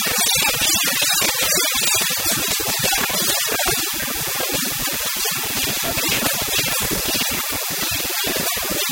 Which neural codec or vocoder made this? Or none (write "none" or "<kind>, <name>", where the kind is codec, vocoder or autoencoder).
none